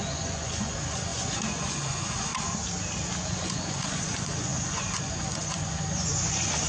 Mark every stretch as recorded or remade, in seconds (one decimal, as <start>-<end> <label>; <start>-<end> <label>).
0.0-2.3 remade; 2.3-3.3 recorded; 3.3-6.7 remade

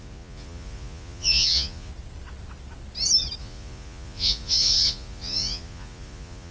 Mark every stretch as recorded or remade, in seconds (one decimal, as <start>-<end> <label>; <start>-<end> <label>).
0.0-1.9 remade; 1.9-3.4 recorded; 3.4-6.5 remade

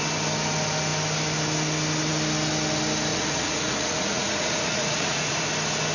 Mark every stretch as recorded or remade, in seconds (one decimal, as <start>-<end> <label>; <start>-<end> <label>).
0.0-3.1 recorded; 3.1-5.4 remade; 5.4-5.9 recorded

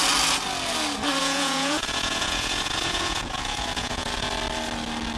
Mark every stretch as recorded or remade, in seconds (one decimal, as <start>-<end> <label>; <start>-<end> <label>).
0.0-1.2 recorded; 1.2-4.3 remade; 4.3-5.2 recorded

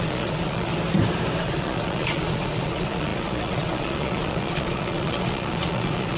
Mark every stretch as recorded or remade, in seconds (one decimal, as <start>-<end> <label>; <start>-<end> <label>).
0.0-0.7 remade; 0.7-1.4 recorded; 1.4-6.2 remade